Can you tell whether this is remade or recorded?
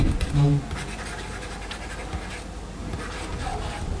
recorded